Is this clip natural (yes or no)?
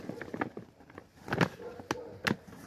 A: yes